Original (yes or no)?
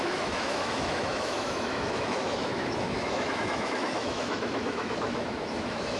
no